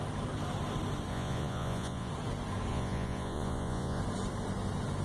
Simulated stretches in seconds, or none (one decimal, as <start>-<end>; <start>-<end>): 1.1-2.1; 2.7-4.0

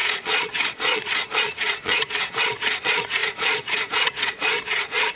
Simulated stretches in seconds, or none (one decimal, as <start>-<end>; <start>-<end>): 0.0-5.2